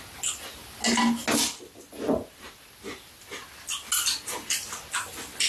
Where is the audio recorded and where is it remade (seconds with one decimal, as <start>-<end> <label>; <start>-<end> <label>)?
0.0-5.5 recorded

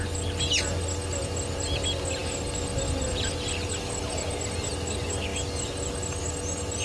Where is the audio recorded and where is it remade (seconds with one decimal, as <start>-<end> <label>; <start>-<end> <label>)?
0.0-6.8 recorded

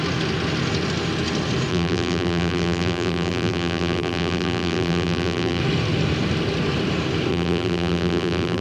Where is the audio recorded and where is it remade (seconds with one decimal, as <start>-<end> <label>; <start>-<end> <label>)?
0.0-1.7 recorded; 1.7-5.6 remade; 5.6-7.3 recorded; 7.3-8.6 remade

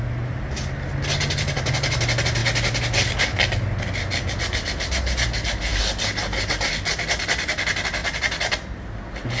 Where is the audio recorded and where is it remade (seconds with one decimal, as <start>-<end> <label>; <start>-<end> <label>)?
0.0-9.4 recorded

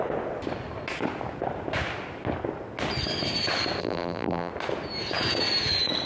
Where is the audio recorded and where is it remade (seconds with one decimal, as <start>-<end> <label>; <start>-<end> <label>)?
0.0-3.8 recorded; 3.8-4.5 remade; 4.5-6.1 recorded

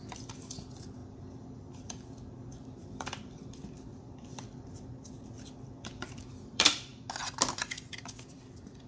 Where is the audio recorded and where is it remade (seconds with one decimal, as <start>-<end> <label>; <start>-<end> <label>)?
0.0-6.9 remade; 6.9-7.9 recorded; 7.9-8.9 remade

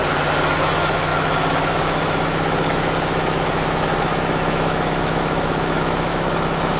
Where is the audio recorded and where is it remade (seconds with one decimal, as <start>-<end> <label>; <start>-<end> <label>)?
0.0-0.5 recorded; 0.5-6.8 remade